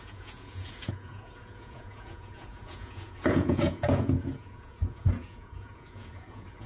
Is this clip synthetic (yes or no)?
yes